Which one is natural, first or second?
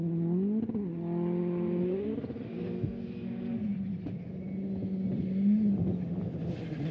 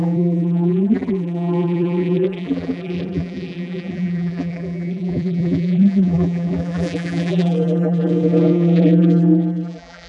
first